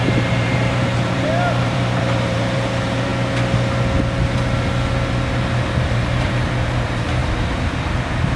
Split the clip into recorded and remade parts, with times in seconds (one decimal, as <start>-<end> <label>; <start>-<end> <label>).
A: 0.0-3.1 remade; 3.1-5.8 recorded; 5.8-8.4 remade